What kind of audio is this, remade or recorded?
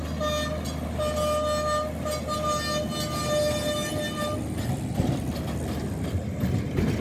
recorded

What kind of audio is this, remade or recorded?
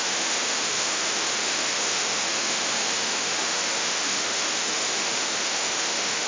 remade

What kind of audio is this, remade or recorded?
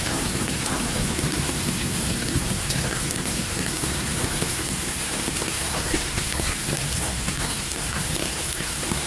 remade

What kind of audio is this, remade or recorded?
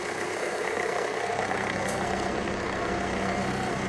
remade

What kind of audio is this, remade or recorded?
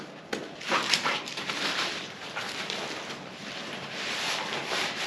remade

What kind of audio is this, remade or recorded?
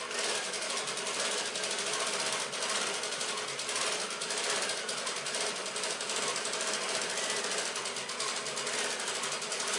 recorded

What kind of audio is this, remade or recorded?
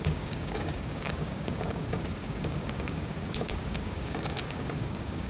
remade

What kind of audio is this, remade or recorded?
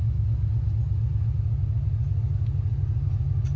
recorded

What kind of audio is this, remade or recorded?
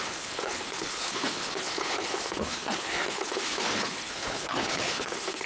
remade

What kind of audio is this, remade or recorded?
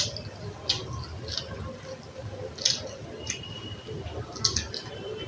recorded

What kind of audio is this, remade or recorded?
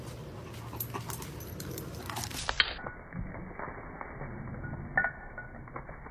recorded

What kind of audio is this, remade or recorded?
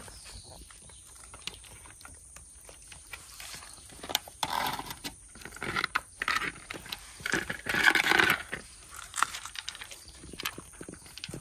remade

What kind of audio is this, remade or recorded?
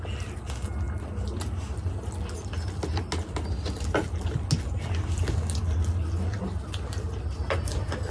recorded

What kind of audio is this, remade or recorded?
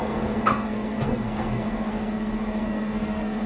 remade